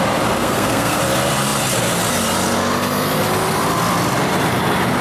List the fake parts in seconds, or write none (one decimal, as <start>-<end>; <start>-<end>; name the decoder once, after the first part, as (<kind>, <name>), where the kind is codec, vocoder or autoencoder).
0.4-1.0 (codec, SNAC)